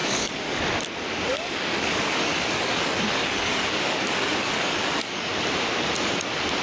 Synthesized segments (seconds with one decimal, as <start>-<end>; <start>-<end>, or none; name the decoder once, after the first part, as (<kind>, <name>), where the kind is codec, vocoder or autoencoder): 0.0-0.6 (codec, DAC); 1.3-5.3